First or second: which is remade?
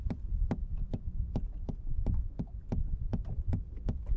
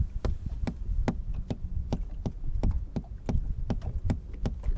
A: first